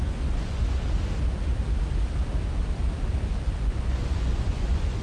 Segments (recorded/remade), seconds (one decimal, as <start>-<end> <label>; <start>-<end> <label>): 0.0-0.6 remade; 0.6-3.6 recorded; 3.6-5.0 remade